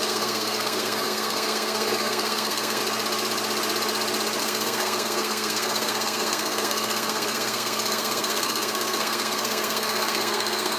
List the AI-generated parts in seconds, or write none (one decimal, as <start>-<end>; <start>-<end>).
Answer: 0.0-2.8; 4.4-10.8